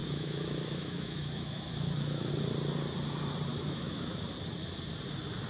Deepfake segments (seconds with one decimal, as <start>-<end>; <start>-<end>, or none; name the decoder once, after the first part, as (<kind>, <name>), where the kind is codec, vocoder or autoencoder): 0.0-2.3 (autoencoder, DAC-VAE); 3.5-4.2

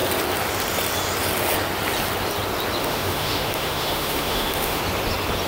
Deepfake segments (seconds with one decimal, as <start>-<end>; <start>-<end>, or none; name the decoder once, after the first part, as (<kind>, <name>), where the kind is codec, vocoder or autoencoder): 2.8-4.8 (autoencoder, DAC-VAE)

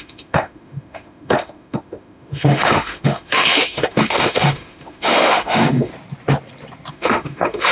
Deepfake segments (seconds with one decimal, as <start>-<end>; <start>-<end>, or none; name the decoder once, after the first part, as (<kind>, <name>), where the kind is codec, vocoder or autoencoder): 0.0-5.9 (autoencoder, DAC-VAE); 6.9-7.7

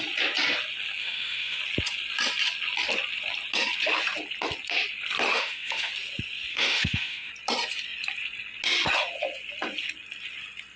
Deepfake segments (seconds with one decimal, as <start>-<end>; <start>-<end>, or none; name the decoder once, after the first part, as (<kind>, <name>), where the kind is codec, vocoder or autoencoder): 1.0-1.6 (autoencoder, DAC-VAE); 5.3-5.9; 6.5-7.3

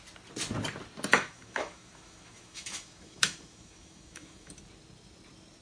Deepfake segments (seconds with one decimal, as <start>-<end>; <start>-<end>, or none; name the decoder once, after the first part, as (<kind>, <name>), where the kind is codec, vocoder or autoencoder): 1.1-4.5 (autoencoder, DAC-VAE)